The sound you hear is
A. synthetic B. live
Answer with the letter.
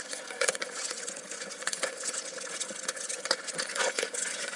A